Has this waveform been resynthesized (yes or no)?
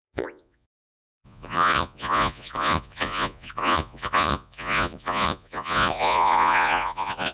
yes